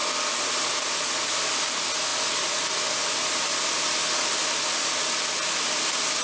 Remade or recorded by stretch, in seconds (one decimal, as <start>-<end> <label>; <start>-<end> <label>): 0.0-6.2 recorded